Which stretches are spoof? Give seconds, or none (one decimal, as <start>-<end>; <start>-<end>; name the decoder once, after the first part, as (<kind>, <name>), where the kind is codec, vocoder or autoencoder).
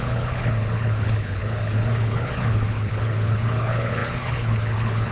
0.0-5.1 (codec, HILCodec)